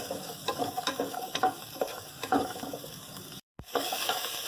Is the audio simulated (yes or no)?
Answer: yes